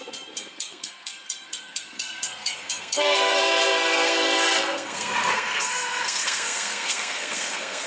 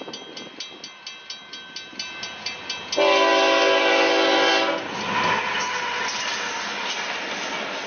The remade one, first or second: first